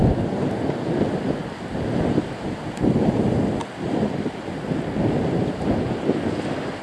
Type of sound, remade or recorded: recorded